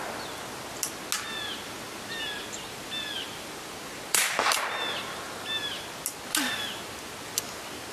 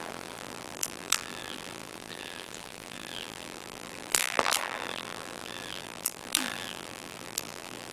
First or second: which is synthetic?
second